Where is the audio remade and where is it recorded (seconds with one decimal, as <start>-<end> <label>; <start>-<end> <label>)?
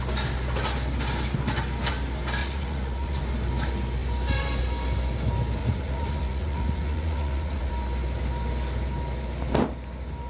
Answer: 0.0-2.4 recorded; 2.4-3.2 remade; 3.2-5.6 recorded; 5.6-7.7 remade; 7.7-10.3 recorded